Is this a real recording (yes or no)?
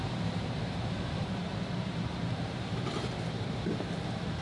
no